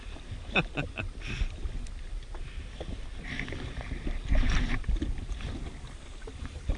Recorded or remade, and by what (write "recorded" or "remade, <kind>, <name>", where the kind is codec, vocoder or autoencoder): recorded